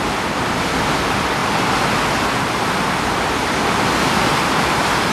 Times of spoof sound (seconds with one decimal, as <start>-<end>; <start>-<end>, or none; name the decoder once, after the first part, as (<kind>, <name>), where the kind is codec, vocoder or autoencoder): 0.0-1.4 (vocoder, BigVGAN v2); 3.8-5.1